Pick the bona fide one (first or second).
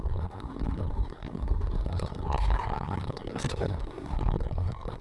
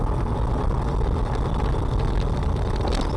second